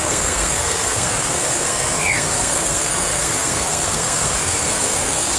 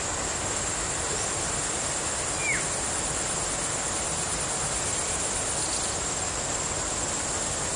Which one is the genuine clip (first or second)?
second